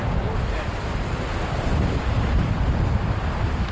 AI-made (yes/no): no